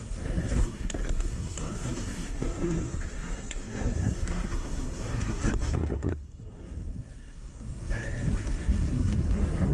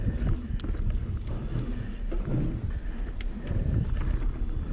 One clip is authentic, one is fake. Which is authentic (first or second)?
second